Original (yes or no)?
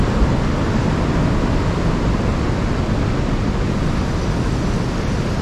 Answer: yes